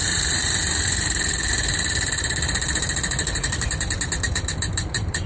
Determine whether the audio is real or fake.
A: fake